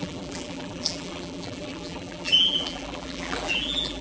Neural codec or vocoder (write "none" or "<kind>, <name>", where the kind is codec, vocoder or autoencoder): vocoder, BigVGAN v2